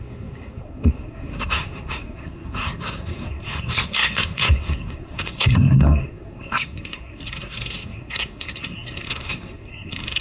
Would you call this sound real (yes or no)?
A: no